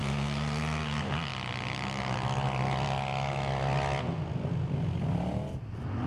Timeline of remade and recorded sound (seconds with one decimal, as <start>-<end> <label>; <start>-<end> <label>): 0.0-6.1 recorded